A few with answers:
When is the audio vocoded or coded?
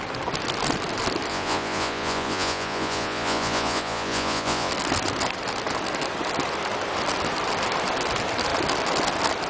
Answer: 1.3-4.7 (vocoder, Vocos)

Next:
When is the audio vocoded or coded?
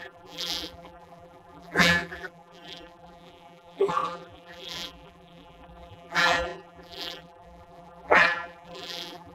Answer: 0.0-9.3 (vocoder, BigVGAN v2)